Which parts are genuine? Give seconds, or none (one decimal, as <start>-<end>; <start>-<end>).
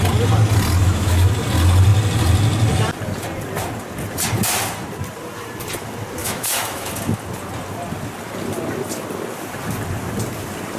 0.0-0.8; 1.3-6.2; 6.9-10.8